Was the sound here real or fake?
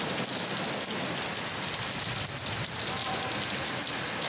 real